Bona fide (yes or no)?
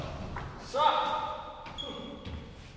yes